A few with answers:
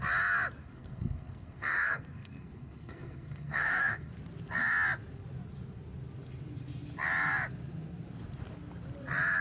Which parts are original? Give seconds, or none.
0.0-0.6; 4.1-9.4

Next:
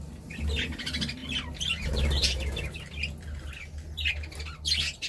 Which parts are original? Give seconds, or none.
0.0-5.1

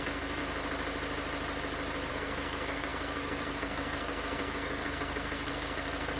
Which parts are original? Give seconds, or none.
0.4-2.1

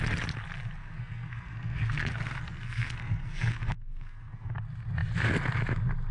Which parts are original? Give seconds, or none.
0.0-0.8; 4.5-6.1

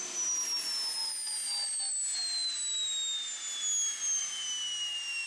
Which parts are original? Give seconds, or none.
0.0-5.3

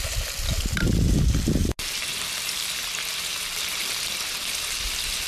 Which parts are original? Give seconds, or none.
0.0-5.3